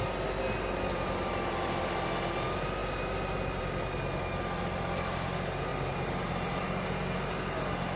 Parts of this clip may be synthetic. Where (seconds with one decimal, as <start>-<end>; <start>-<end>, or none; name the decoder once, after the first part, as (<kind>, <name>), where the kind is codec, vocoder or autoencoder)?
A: 5.7-8.0 (vocoder, BigVGAN v2)